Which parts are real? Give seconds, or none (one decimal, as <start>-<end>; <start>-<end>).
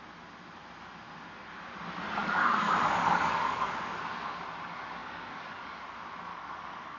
0.0-2.2; 3.7-5.0; 5.8-6.3